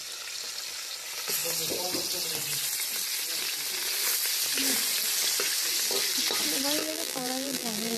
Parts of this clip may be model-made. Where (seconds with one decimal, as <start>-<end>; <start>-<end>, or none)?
6.8-8.0